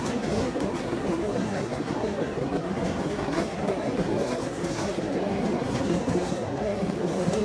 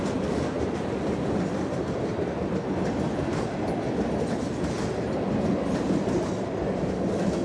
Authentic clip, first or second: second